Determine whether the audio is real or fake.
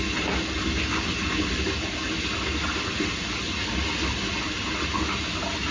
real